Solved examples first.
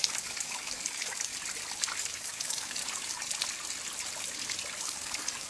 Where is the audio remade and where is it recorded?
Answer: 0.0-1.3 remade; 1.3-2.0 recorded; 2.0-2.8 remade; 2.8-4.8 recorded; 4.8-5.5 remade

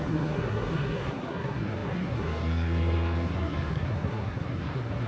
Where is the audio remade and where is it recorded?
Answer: 0.0-5.1 remade